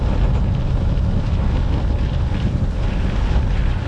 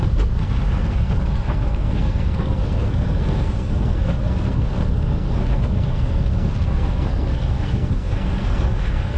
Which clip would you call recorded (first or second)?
first